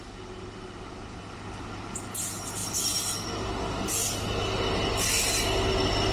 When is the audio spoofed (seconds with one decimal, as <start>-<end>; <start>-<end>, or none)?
none